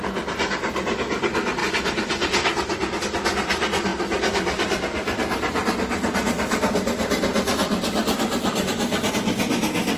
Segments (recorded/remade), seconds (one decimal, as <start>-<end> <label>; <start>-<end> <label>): 0.0-10.0 recorded